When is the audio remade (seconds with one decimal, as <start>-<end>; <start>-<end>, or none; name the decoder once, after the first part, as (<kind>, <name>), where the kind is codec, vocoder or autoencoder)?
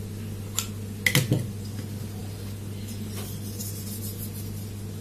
none